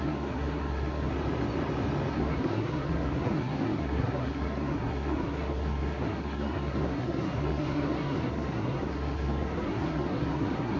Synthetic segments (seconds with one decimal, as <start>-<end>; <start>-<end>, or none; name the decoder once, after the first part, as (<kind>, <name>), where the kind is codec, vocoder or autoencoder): 0.0-1.1 (codec, SNAC); 2.1-10.8